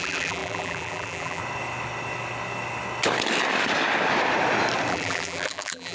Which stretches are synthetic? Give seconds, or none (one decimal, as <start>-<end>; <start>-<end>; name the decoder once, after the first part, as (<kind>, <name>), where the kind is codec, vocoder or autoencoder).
0.0-1.4 (vocoder, BigVGAN v2); 4.9-5.9